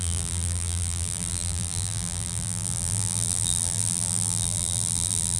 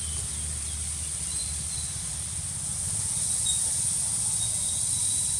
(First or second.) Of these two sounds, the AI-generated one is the first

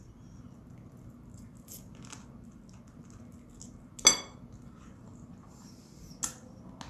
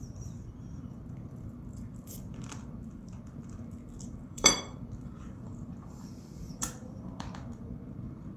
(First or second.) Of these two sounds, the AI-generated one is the second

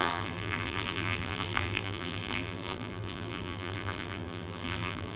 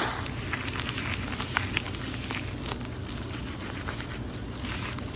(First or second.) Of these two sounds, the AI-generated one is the first